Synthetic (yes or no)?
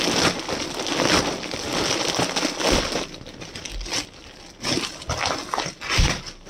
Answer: no